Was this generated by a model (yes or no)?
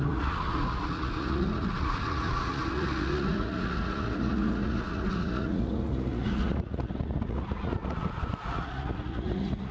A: yes